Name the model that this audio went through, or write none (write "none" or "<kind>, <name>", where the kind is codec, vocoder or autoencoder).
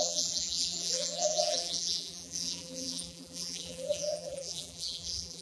vocoder, BigVGAN v2